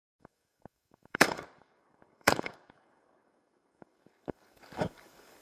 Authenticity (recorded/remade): remade